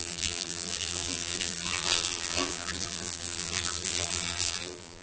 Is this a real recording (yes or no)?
no